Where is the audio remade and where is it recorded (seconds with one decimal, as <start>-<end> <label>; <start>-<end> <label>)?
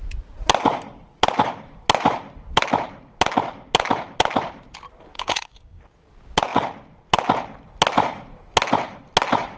0.0-5.1 recorded; 5.1-5.8 remade; 5.8-9.6 recorded